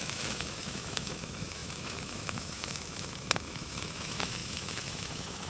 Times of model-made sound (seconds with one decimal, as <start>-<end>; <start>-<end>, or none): 0.0-5.5